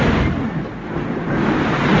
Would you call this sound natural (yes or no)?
yes